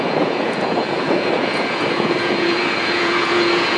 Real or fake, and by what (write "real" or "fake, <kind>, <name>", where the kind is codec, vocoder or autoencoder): fake, vocoder, Vocos